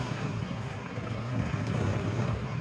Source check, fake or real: fake